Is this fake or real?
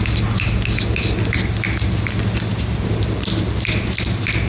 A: real